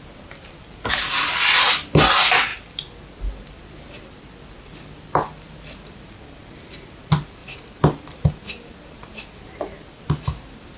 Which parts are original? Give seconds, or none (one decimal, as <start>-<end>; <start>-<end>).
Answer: 0.0-10.8